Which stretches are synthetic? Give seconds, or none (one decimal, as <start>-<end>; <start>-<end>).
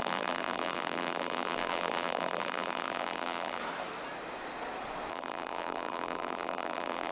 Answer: 0.0-3.6; 5.1-7.1